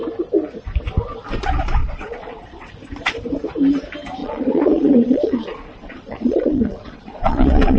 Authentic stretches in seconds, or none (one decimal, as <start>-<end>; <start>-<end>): 0.0-1.8; 2.7-4.2